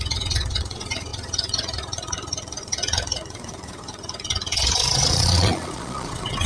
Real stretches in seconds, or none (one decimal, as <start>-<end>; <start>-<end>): none